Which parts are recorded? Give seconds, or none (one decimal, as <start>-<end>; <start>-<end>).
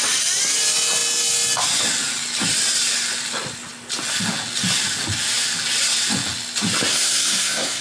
0.0-6.9